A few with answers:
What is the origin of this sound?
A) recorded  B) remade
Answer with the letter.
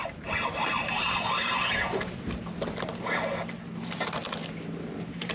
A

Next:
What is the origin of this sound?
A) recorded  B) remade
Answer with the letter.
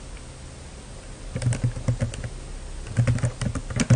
A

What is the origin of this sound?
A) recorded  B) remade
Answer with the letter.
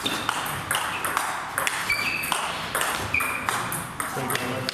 A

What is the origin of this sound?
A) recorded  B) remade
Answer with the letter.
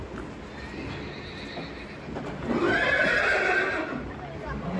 A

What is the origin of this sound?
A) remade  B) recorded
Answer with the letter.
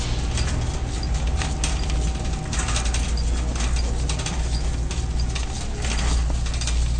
B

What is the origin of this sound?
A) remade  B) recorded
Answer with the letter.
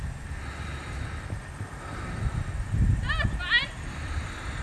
B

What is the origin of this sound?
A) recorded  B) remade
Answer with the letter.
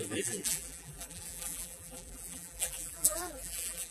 B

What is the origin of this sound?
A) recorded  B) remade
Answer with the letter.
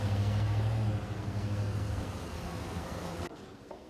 B